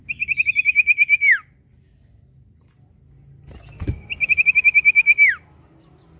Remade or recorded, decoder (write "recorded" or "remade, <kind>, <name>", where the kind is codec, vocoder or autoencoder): recorded